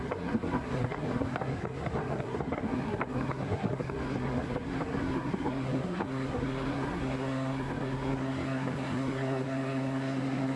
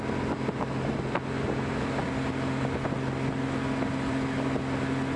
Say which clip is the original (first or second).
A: second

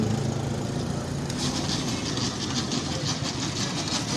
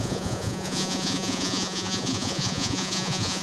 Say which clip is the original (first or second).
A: first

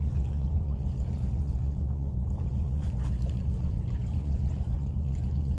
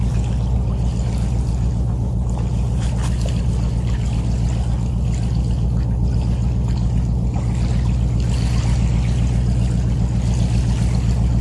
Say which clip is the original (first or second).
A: second